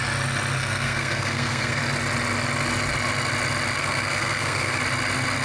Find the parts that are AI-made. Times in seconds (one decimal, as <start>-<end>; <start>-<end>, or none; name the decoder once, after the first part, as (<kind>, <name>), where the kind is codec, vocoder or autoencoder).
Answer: 0.6-1.8 (codec, SNAC); 3.8-4.8